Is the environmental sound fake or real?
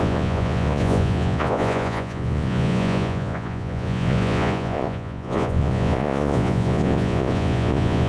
fake